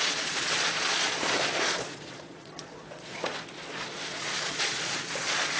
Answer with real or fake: fake